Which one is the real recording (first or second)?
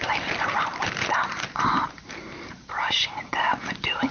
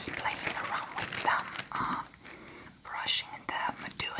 second